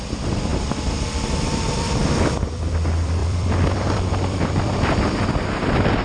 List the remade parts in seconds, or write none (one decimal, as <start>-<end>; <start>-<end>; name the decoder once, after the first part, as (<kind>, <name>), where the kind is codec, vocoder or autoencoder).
0.0-6.0 (vocoder, BigVGAN v2)